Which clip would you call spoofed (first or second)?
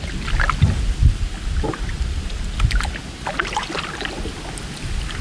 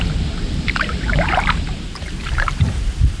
second